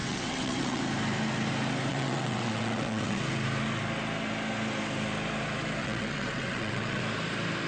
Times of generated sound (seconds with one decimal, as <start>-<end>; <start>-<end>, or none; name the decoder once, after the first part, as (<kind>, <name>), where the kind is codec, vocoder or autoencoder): 0.0-0.8 (vocoder, WaveNeXt); 1.9-3.2; 5.8-7.0